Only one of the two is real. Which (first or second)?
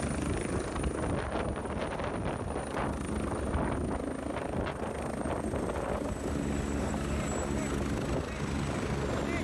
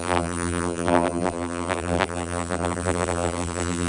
first